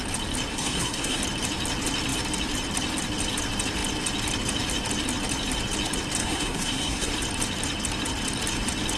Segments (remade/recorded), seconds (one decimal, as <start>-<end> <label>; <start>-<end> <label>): 0.0-0.5 recorded; 0.5-1.2 remade; 1.2-6.2 recorded; 6.2-7.1 remade; 7.1-9.0 recorded